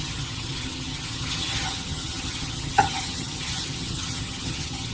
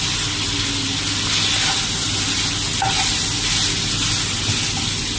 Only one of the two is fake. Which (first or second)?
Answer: first